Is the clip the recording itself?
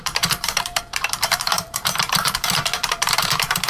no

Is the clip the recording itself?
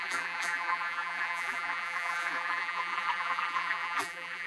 no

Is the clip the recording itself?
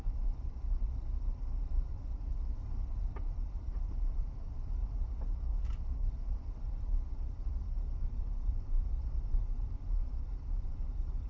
no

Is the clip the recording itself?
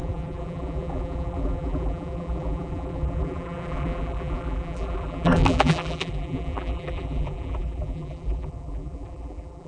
no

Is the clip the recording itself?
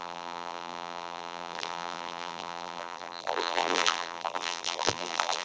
no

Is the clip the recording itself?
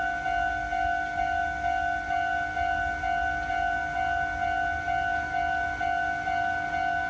yes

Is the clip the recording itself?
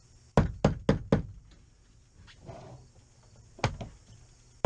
yes